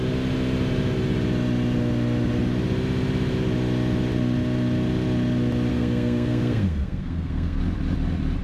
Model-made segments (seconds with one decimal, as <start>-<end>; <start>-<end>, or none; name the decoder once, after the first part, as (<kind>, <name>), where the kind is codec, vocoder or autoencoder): 5.7-7.6 (codec, SNAC)